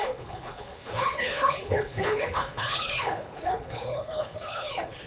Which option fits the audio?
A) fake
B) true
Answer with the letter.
A